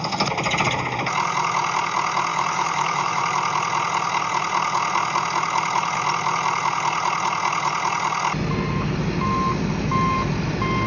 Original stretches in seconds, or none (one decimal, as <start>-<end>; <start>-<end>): 0.0-2.3; 3.2-10.9